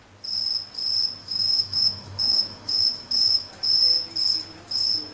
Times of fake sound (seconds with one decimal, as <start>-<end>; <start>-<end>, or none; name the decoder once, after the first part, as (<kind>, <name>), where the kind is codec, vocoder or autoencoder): 1.2-3.5 (autoencoder, DAC-VAE)